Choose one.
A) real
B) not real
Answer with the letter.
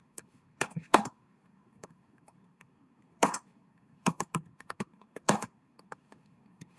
B